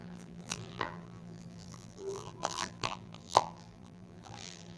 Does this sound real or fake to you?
fake